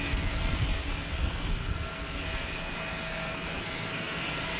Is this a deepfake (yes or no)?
yes